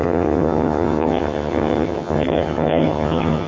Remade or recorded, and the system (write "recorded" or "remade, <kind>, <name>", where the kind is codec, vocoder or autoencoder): remade, vocoder, HiFi-GAN